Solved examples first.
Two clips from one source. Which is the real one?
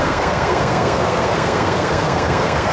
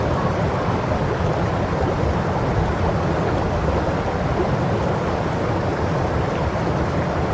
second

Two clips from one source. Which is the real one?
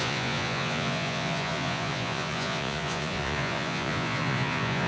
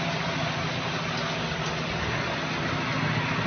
second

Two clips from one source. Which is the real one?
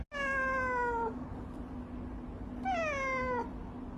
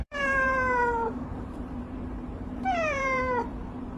first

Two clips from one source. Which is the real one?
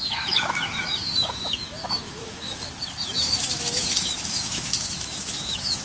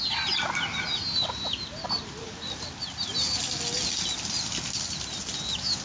second